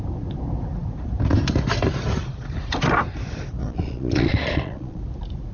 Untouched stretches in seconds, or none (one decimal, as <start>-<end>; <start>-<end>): 0.0-3.6; 5.0-5.5